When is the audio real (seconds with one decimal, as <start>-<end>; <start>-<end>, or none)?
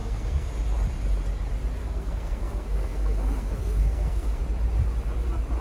0.5-1.8; 4.4-5.6